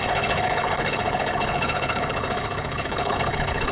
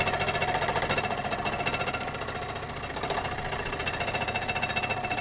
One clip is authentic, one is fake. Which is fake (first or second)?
first